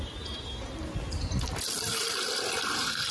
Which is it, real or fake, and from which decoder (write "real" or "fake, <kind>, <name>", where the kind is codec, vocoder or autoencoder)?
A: real